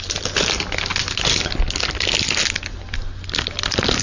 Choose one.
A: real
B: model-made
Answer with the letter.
A